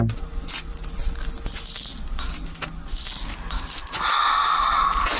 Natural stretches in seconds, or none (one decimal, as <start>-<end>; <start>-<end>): 0.0-5.2